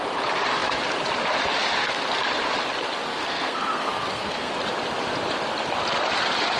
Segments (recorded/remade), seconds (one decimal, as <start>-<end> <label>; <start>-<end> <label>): 0.0-3.1 recorded; 3.1-4.5 remade; 4.5-6.6 recorded